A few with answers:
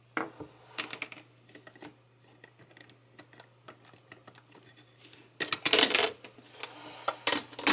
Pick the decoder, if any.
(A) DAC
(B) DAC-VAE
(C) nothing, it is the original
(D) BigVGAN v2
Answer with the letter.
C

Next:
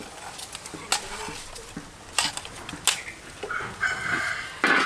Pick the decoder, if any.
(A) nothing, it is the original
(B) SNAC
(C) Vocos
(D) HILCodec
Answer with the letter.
A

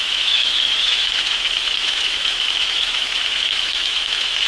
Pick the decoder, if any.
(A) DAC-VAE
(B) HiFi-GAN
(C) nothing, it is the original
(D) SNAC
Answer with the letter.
A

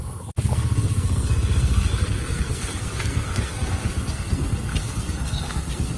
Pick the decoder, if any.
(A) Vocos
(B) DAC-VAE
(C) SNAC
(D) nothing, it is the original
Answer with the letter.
C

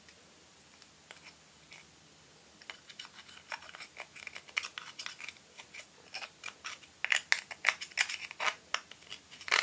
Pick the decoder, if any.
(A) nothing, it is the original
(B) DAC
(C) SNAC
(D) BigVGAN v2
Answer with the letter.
A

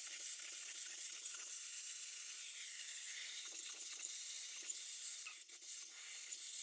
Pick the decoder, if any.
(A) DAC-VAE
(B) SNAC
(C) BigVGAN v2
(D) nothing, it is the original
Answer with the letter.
D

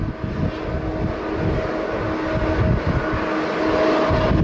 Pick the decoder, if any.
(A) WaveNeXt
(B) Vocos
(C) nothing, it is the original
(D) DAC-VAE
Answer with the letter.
C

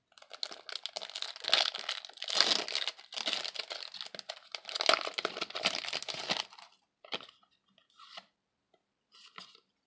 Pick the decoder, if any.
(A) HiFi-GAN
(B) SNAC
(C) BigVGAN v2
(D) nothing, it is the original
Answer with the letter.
D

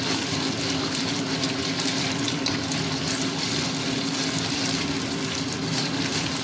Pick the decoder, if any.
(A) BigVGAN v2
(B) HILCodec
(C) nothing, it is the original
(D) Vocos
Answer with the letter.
C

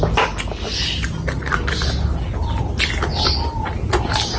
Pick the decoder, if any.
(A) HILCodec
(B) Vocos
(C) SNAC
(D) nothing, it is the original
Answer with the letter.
D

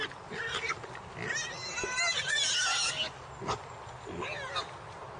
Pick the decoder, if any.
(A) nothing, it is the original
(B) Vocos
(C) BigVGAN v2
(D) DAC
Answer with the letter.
A